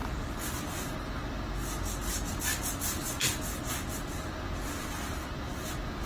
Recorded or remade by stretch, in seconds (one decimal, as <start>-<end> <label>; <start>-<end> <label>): 0.0-6.1 recorded